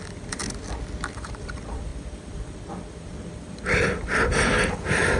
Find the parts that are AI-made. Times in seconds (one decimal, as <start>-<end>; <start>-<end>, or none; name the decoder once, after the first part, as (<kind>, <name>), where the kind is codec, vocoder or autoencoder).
0.0-0.4 (vocoder, BigVGAN v2); 1.1-5.2